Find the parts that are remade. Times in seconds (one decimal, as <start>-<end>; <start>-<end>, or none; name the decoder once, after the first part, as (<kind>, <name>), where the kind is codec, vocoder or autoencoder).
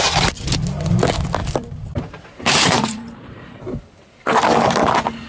1.4-3.8 (vocoder, BigVGAN v2)